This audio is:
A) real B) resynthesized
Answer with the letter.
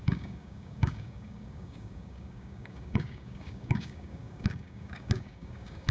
B